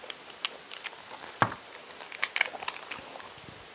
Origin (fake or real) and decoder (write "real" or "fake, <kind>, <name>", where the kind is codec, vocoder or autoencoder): real